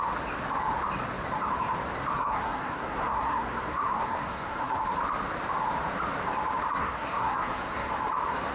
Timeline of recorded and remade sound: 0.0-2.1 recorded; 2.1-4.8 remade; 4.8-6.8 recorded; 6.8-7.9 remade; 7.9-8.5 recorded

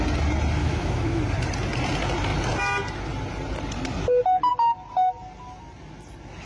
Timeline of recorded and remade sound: 0.0-0.6 recorded; 0.6-1.2 remade; 1.2-6.5 recorded

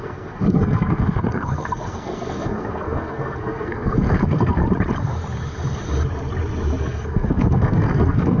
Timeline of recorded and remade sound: 0.0-4.6 remade; 4.6-6.8 recorded; 6.8-8.4 remade

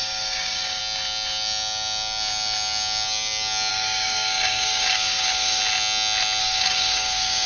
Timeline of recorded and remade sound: 0.0-0.8 remade; 0.8-3.7 recorded; 3.7-5.6 remade; 5.6-6.4 recorded; 6.4-7.5 remade